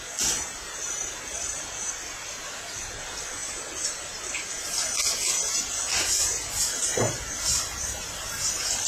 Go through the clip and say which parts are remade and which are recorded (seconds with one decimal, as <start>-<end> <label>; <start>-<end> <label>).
0.0-8.9 recorded